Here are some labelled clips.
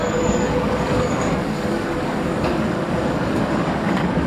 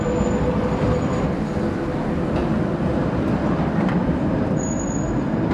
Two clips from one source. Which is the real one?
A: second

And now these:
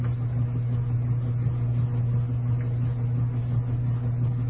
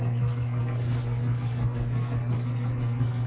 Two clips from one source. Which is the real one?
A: first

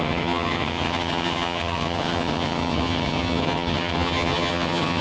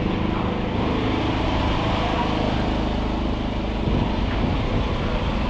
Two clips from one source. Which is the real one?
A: second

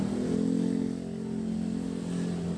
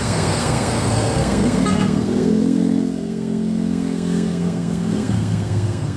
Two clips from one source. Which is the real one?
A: first